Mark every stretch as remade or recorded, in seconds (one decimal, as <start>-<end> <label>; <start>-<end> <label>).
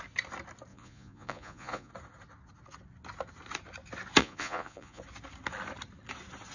0.0-0.7 recorded; 0.7-1.9 remade; 1.9-4.2 recorded; 4.2-5.0 remade; 5.0-6.5 recorded